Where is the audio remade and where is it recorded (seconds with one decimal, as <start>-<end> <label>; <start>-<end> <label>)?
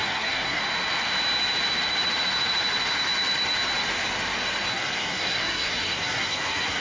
0.0-0.6 remade; 0.6-4.7 recorded; 4.7-6.8 remade